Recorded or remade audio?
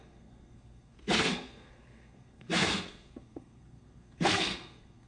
remade